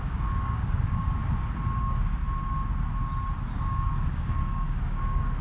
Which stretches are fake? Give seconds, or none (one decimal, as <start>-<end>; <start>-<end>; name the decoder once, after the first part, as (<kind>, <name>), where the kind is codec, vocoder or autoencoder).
0.0-1.2 (codec, DAC); 1.8-2.2; 3.6-5.4